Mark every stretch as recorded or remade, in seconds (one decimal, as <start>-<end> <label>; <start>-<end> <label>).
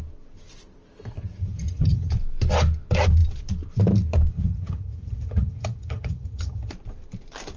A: 0.0-1.4 recorded; 1.4-2.1 remade; 2.1-4.3 recorded; 4.3-6.7 remade; 6.7-7.6 recorded